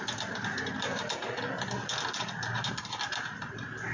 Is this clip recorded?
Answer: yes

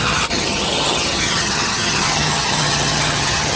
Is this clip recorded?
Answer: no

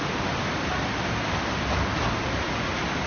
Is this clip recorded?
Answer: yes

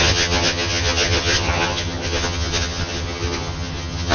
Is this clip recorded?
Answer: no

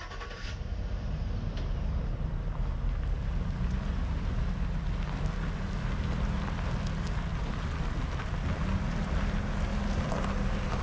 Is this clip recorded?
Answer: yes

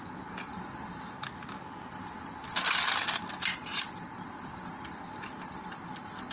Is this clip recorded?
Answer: yes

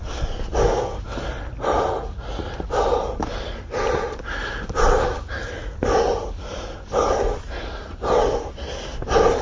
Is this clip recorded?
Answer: yes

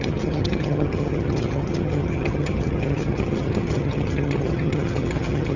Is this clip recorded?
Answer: no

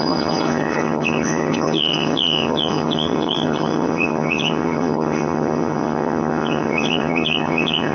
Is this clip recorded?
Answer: no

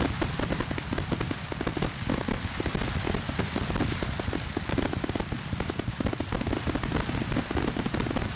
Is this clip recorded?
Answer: yes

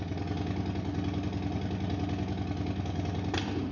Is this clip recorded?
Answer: yes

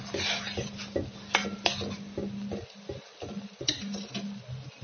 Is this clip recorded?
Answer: yes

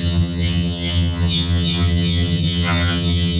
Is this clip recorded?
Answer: no